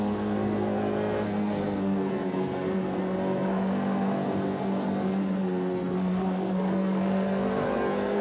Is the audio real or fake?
fake